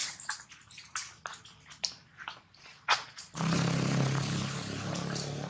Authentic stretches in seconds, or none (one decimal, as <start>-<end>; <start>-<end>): 0.0-5.5